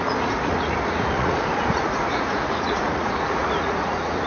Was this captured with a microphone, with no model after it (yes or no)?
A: no